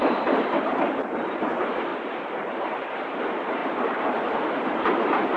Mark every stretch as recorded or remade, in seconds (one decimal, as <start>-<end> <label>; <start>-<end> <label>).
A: 0.0-1.9 recorded; 1.9-2.5 remade; 2.5-3.6 recorded; 3.6-4.1 remade; 4.1-5.4 recorded

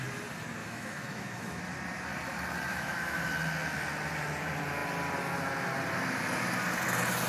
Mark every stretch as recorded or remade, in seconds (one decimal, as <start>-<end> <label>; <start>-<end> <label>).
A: 0.0-0.6 recorded; 0.6-1.6 remade; 1.6-2.7 recorded; 2.7-3.3 remade; 3.3-7.3 recorded

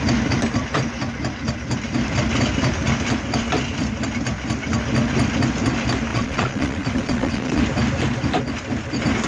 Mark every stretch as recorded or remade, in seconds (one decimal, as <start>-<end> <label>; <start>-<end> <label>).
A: 0.0-6.1 recorded; 6.1-7.6 remade; 7.6-9.3 recorded

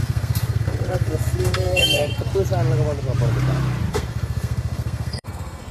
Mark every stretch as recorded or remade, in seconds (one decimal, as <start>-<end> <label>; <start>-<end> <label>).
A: 0.0-2.1 remade; 2.1-3.9 recorded; 3.9-5.7 remade

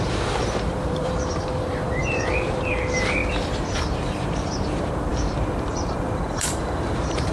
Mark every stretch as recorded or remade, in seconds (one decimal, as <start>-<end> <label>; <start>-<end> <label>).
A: 0.0-3.2 remade; 3.2-4.0 recorded; 4.0-7.3 remade

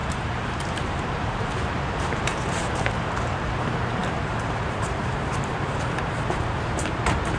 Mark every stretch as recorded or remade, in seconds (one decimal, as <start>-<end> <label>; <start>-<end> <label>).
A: 0.0-7.4 remade